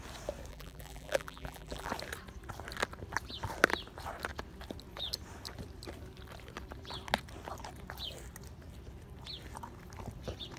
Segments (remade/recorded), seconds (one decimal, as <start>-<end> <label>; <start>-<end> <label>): 0.0-0.5 recorded; 0.5-1.9 remade; 1.9-10.6 recorded